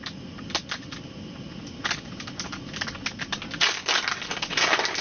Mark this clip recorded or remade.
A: recorded